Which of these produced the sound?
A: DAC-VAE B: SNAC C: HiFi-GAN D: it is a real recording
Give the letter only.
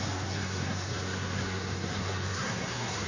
B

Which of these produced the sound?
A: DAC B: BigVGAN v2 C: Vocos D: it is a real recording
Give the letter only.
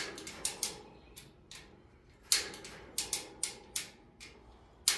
D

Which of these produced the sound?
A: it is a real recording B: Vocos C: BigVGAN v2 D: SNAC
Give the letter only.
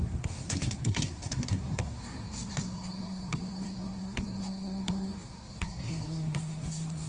D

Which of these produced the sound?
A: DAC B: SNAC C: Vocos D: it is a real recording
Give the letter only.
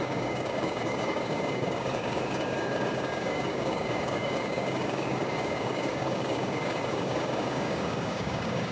A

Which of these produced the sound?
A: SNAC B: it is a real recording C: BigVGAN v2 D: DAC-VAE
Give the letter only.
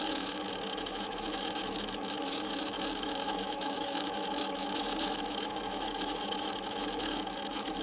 D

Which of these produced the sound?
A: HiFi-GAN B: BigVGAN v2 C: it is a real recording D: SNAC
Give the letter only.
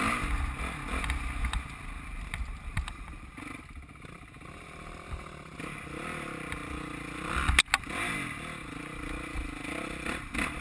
C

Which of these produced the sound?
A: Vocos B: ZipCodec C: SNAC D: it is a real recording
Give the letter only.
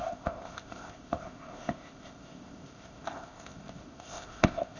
B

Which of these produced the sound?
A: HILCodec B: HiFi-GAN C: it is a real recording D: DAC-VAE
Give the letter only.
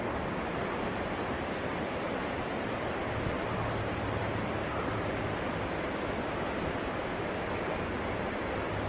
C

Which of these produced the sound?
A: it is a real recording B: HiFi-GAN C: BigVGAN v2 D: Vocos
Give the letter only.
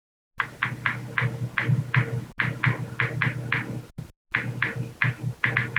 A